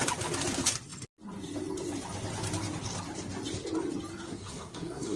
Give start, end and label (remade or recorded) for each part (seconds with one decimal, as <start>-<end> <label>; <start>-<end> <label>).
0.0-4.3 recorded; 4.3-5.2 remade